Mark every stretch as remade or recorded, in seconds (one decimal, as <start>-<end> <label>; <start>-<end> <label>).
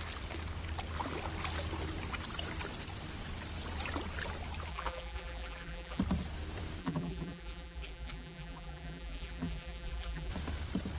0.0-4.7 recorded; 4.7-6.0 remade; 6.0-6.8 recorded; 6.8-10.3 remade; 10.3-11.0 recorded